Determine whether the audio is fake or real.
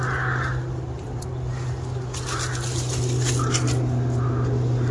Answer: real